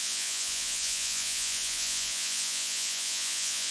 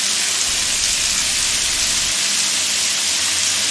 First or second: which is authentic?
second